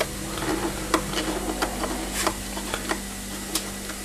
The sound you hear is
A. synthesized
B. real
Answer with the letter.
B